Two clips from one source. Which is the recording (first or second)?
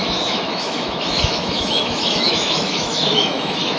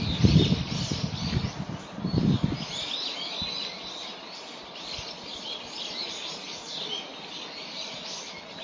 second